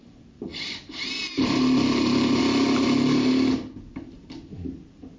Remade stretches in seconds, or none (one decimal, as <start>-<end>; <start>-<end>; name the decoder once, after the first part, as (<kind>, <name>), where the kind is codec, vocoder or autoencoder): none

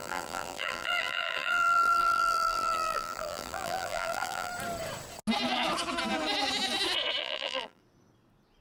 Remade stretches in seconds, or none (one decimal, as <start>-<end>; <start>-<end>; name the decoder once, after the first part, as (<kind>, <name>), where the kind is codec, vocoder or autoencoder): 0.0-4.5 (vocoder, BigVGAN v2); 7.2-7.8

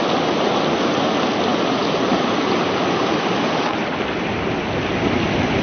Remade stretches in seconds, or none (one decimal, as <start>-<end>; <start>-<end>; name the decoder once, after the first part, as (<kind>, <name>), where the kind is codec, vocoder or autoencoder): none

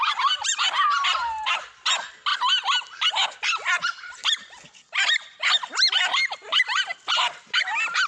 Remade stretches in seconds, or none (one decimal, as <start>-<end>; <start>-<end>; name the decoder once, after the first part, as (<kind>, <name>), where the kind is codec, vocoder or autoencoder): none

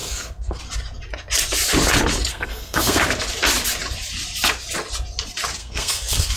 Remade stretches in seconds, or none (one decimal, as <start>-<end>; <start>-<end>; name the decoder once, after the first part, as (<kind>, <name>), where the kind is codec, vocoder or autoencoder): 0.0-0.6 (codec, SNAC); 2.3-3.0; 5.6-6.4

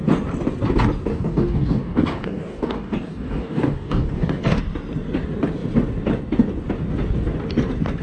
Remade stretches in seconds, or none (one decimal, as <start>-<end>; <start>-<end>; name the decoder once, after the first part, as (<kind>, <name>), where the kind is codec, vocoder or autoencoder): 1.1-4.6 (codec, DAC)